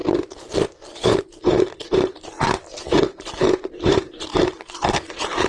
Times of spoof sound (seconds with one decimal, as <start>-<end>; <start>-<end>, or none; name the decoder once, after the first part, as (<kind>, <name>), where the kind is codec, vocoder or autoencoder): 0.0-5.5 (vocoder, BigVGAN v2)